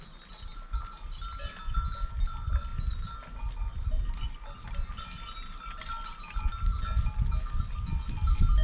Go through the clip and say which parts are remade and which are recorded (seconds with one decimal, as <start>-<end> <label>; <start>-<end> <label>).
0.0-8.6 recorded